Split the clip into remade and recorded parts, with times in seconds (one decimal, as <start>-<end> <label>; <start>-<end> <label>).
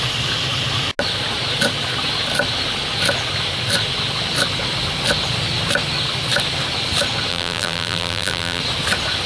0.0-7.3 recorded; 7.3-8.6 remade; 8.6-9.3 recorded